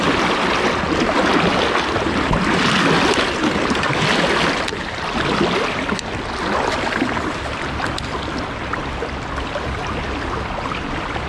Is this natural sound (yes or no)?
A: yes